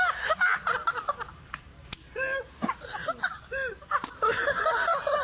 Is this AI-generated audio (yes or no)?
no